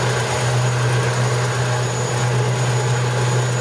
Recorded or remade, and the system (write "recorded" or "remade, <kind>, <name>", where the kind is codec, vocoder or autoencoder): recorded